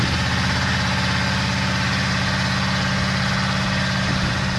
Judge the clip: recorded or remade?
recorded